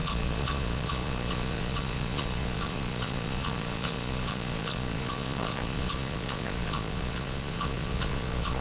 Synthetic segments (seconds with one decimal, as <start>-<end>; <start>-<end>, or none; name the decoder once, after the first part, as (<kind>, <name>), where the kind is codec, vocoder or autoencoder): 0.0-8.6 (vocoder, Vocos)